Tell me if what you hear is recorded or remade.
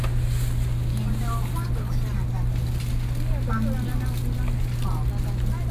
recorded